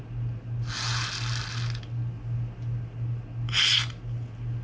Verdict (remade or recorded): recorded